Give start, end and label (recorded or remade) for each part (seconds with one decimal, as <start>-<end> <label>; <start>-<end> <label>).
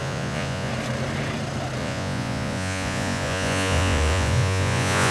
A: 0.0-0.7 remade; 0.7-1.8 recorded; 1.8-5.1 remade